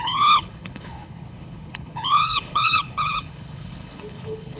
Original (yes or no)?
no